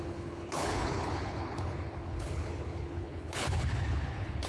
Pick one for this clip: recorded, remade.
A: remade